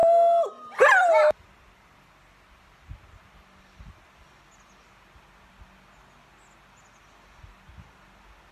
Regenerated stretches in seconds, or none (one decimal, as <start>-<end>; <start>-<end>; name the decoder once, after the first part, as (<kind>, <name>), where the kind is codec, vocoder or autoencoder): none